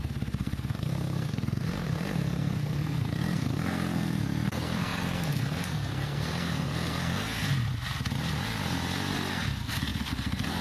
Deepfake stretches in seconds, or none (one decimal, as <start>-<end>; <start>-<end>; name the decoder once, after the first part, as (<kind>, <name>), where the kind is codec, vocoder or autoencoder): 0.0-7.5 (codec, SNAC); 9.3-10.6